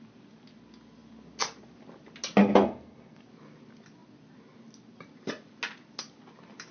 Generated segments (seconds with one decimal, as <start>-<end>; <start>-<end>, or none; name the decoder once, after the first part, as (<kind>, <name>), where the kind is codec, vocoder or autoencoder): 2.4-3.2 (codec, SNAC)